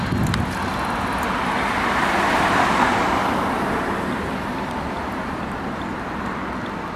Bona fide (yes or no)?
yes